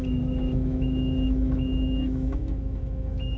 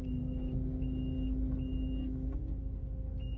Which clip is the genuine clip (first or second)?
second